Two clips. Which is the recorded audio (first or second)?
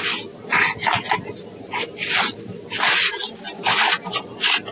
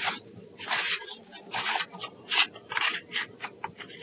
first